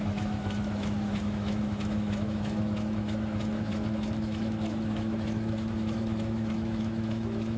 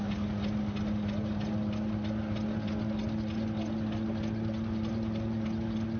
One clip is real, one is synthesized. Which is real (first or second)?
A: second